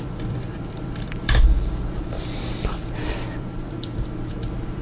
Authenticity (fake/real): fake